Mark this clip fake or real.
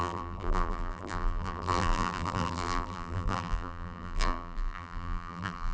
fake